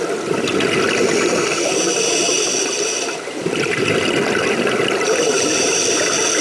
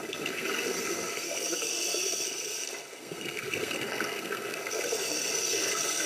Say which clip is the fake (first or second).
second